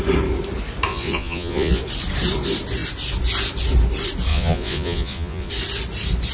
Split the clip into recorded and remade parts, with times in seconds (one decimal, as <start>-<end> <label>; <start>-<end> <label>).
0.0-0.9 recorded; 0.9-1.8 remade; 1.8-4.3 recorded; 4.3-5.5 remade; 5.5-6.3 recorded